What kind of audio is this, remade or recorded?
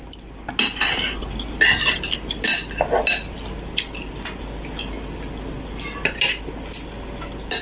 recorded